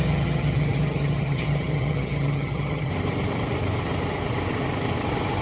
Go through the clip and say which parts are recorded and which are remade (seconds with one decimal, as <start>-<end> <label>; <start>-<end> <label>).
0.0-2.9 remade; 2.9-5.4 recorded

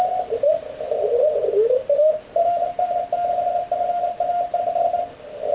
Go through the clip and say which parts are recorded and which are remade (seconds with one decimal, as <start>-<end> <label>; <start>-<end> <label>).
0.0-5.5 recorded

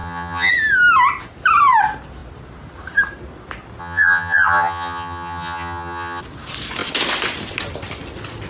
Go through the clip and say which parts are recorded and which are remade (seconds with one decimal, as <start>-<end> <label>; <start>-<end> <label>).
0.0-0.5 remade; 0.5-3.8 recorded; 3.8-6.2 remade; 6.2-8.5 recorded